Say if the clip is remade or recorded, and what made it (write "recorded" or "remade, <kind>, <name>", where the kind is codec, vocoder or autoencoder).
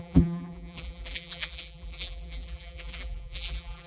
remade, vocoder, BigVGAN v2